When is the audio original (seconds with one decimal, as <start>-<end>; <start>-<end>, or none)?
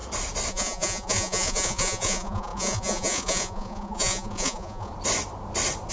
0.0-0.5; 4.9-5.9